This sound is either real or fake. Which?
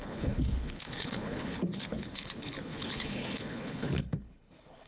fake